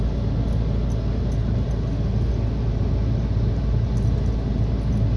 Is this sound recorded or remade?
recorded